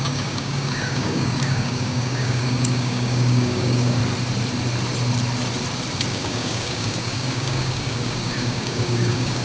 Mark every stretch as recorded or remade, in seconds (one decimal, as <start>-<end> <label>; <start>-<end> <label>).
0.0-4.0 remade; 4.0-6.1 recorded; 6.1-9.4 remade